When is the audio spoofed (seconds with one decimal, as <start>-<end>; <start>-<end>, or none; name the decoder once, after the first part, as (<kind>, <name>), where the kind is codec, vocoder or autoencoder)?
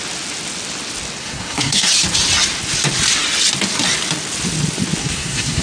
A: 1.2-1.9 (codec, SNAC); 5.0-5.6